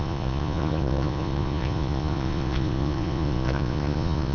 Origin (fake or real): fake